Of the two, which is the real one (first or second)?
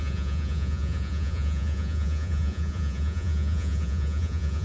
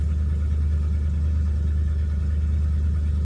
second